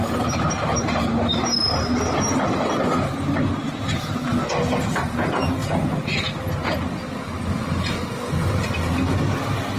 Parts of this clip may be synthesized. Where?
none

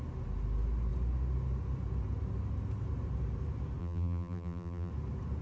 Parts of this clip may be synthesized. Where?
3.8-4.9 (vocoder, BigVGAN v2)

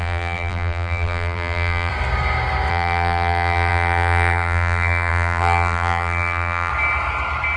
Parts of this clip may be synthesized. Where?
0.0-1.9 (vocoder, BigVGAN v2); 2.7-6.7

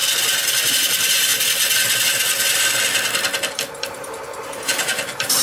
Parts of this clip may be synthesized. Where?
0.7-1.3 (vocoder, BigVGAN v2); 3.5-5.4

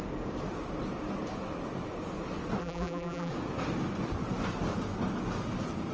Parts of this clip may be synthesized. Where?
2.6-3.3 (vocoder, BigVGAN v2)